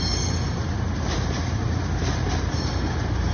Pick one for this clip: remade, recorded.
remade